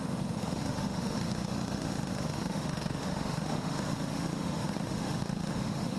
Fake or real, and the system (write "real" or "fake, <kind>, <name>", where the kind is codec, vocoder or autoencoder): fake, autoencoder, DAC-VAE